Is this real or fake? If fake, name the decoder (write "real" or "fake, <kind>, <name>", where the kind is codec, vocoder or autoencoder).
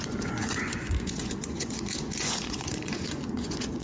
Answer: fake, vocoder, Vocos